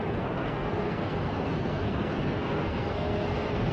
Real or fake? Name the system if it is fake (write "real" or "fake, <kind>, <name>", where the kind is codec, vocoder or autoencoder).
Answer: fake, codec, SNAC